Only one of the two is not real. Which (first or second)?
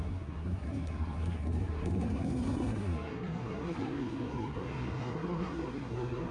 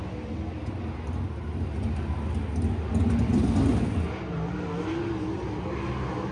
first